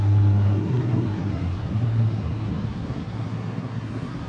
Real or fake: fake